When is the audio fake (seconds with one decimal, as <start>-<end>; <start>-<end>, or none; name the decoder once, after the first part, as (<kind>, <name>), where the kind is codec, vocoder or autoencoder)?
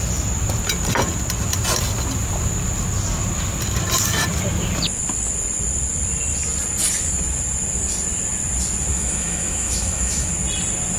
8.9-10.3 (autoencoder, DAC-VAE)